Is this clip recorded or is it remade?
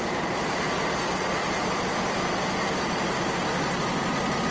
recorded